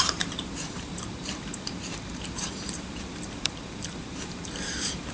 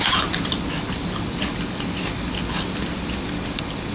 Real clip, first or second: second